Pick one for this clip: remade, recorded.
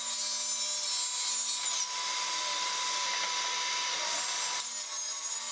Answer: recorded